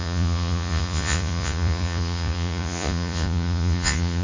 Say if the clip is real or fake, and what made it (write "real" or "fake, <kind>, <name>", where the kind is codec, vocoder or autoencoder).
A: fake, vocoder, Vocos